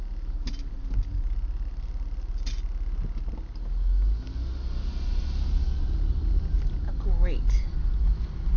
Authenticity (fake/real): real